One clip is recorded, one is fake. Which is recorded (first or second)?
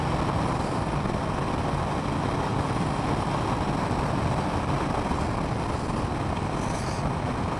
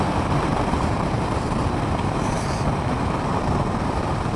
first